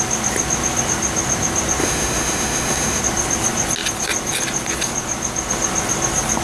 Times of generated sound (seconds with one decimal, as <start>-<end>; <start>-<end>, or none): 1.8-3.0

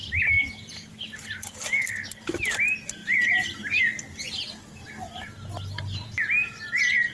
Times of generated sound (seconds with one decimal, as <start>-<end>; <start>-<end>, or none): 0.0-1.4

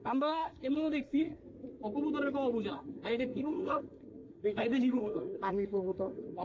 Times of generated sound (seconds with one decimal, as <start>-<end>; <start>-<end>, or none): 0.0-1.4; 2.7-6.4

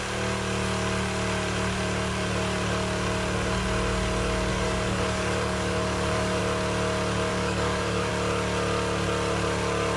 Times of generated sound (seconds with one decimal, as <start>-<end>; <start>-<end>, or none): 4.5-6.4; 7.3-8.1

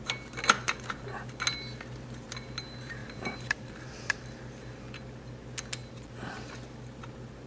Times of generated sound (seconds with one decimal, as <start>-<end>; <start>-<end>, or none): 3.0-4.2; 5.8-6.4

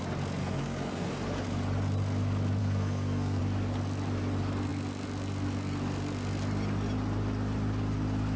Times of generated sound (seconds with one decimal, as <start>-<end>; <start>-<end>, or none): 0.4-1.1; 2.6-3.4

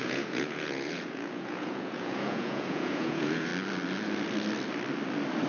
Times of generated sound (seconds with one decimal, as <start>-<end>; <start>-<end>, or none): 0.0-3.5

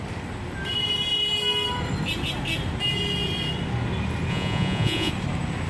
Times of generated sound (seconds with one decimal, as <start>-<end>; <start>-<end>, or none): 4.3-5.1